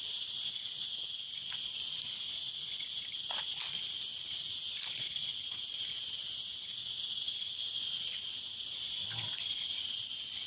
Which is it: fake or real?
real